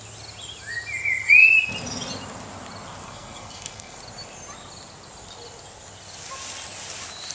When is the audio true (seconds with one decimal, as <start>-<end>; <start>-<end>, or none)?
0.0-3.0; 4.0-7.3